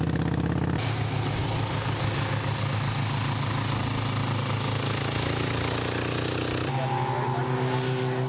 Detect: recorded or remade recorded